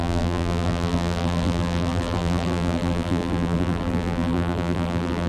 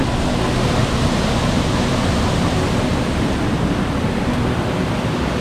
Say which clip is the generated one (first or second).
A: first